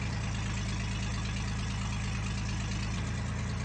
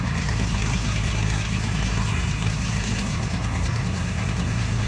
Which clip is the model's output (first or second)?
second